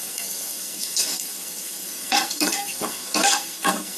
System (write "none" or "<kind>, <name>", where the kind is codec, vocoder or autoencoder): codec, SNAC